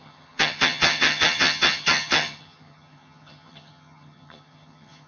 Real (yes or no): no